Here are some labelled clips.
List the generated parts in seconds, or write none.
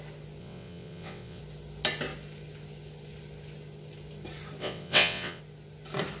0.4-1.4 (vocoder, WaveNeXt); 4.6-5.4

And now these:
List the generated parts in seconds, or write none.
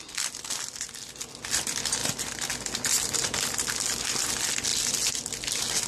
none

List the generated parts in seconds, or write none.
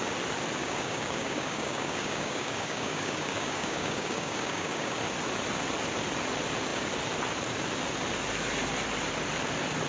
0.6-5.0 (codec, DAC)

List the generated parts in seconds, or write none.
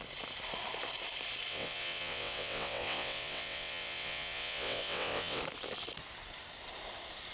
1.5-5.4 (vocoder, WaveNeXt)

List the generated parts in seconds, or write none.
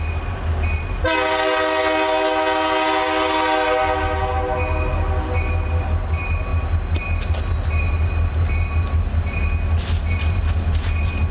none